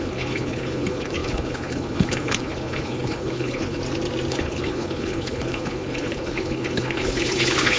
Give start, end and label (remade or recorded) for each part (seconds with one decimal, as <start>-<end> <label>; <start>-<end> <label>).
0.0-3.8 remade; 3.8-4.3 recorded; 4.3-7.8 remade

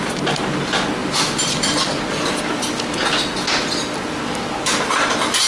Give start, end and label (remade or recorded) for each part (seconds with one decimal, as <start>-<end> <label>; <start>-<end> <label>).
0.0-5.5 recorded

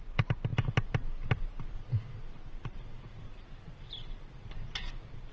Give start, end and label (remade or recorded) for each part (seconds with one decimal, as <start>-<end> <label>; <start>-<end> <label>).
0.0-5.3 recorded

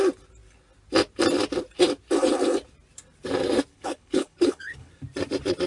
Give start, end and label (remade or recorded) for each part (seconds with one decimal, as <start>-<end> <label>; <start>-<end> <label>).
0.0-3.7 recorded; 3.7-4.9 remade; 4.9-5.7 recorded